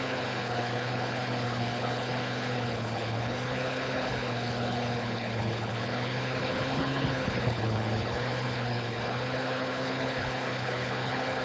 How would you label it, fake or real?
fake